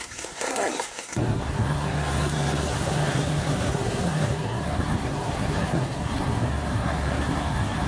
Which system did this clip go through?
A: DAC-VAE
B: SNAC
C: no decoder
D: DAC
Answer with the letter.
B